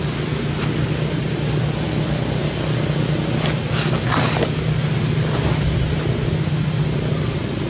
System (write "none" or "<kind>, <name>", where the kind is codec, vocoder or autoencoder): none